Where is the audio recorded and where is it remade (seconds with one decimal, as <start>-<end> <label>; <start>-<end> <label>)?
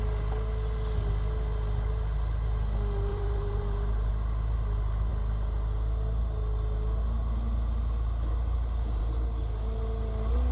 0.0-3.1 recorded; 3.1-4.1 remade; 4.1-10.5 recorded